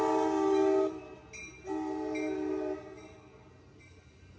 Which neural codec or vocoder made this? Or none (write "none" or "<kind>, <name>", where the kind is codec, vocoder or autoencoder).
none